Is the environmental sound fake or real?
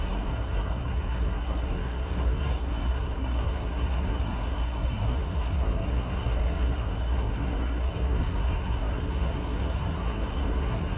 fake